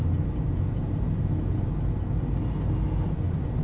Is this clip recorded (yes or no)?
yes